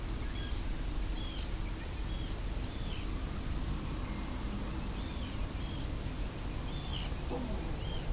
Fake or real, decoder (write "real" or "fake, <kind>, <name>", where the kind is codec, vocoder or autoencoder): real